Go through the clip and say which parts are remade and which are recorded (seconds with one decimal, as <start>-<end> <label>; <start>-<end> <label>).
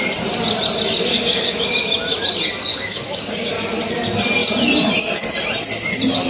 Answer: 0.0-1.1 recorded; 1.1-1.7 remade; 1.7-2.7 recorded; 2.7-3.5 remade; 3.5-6.3 recorded